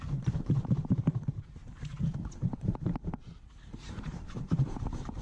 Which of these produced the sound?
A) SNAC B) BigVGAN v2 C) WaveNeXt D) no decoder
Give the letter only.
B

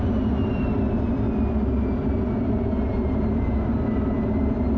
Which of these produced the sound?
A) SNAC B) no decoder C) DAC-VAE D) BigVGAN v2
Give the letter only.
D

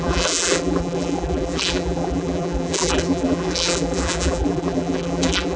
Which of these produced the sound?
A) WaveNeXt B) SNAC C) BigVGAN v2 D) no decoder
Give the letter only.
C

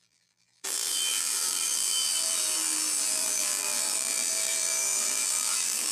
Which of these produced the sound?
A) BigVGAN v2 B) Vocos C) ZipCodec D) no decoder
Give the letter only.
A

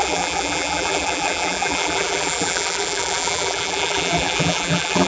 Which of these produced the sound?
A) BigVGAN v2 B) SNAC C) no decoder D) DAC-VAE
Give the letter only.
A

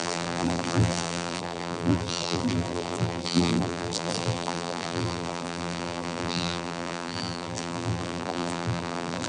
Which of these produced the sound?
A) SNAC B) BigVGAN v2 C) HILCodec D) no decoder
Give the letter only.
B